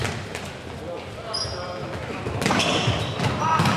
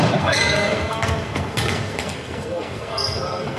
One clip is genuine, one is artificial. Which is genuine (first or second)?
first